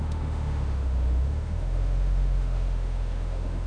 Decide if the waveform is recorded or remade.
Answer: remade